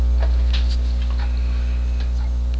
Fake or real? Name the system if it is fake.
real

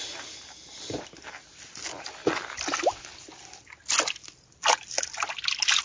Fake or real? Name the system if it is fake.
real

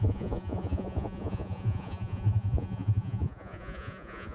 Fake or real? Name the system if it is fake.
fake, vocoder, Vocos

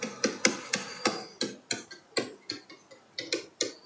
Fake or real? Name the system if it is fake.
real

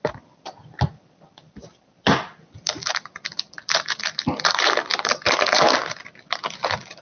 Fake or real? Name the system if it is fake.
real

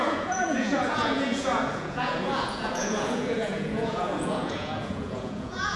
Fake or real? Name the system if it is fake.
fake, vocoder, Vocos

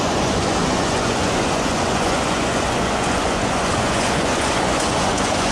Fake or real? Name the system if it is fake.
fake, vocoder, Vocos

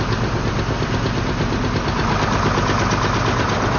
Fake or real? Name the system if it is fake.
real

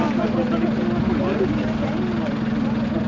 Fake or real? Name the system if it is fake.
real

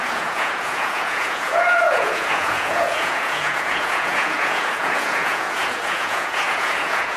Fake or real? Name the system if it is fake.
fake, vocoder, Vocos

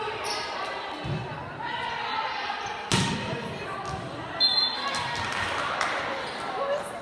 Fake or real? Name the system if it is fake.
real